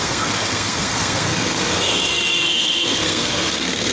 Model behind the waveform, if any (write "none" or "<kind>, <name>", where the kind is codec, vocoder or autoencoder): codec, SNAC